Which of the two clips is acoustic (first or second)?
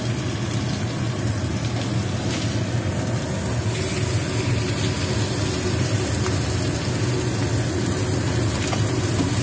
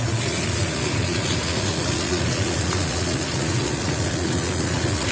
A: first